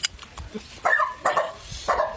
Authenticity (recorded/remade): recorded